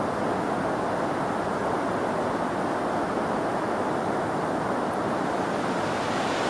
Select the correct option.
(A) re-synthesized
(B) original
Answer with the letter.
B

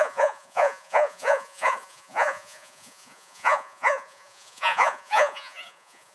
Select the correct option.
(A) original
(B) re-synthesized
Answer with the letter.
B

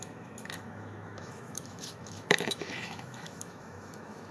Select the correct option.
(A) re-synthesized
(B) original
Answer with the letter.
A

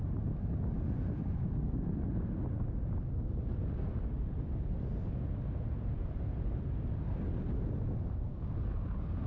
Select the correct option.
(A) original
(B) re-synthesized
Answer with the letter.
A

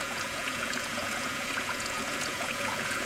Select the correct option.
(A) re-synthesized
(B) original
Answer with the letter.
A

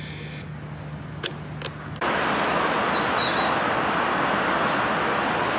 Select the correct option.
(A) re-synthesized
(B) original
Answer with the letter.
B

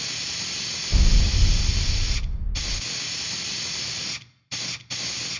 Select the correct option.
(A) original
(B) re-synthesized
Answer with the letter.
A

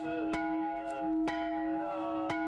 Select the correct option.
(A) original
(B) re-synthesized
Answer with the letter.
B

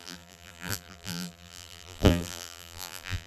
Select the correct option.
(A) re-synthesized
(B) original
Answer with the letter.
A